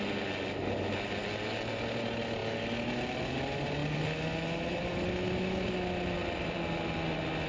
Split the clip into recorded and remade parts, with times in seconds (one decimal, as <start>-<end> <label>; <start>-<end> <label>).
0.0-7.5 recorded